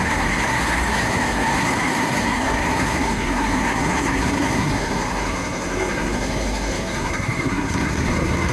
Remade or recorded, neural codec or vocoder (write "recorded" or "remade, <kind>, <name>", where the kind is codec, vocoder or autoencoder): remade, codec, SNAC